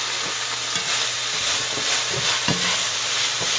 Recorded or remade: recorded